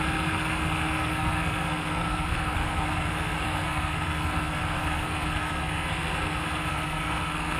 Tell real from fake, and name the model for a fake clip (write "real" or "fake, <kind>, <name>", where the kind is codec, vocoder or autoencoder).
fake, codec, SNAC